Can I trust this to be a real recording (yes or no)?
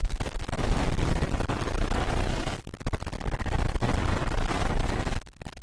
no